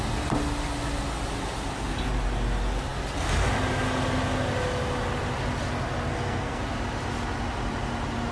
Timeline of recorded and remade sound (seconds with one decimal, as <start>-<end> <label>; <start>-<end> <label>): 0.0-6.1 recorded; 6.1-6.6 remade; 6.6-8.3 recorded